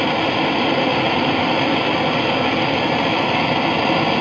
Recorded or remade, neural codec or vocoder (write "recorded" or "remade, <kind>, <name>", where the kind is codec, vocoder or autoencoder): recorded